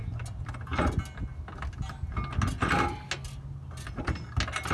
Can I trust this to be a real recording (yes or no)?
yes